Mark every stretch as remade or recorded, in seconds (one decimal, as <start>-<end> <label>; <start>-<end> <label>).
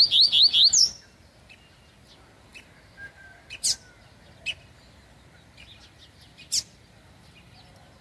0.0-8.0 recorded